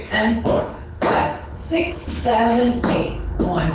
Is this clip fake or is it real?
fake